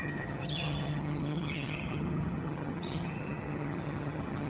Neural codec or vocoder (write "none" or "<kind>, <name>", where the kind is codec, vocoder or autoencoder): vocoder, HiFi-GAN